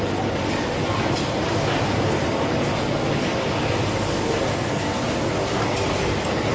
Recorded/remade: recorded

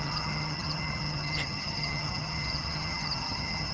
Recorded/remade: remade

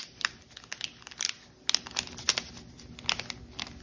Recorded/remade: recorded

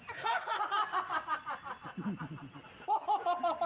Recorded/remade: recorded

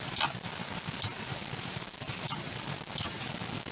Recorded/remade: recorded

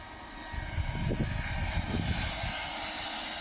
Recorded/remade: recorded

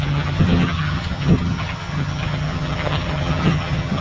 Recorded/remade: remade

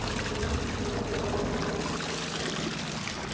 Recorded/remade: recorded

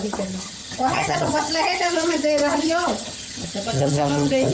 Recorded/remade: remade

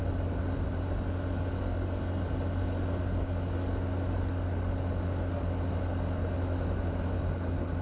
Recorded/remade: recorded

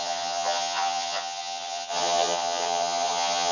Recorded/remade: remade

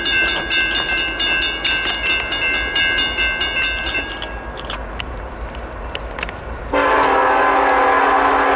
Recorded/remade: recorded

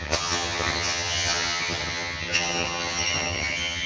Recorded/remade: remade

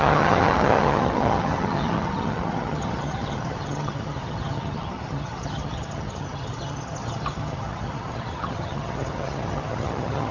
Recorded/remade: remade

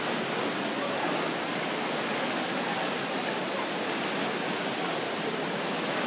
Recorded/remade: recorded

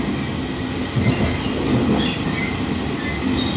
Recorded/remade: recorded